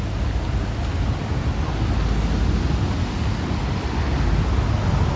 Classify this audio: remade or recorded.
recorded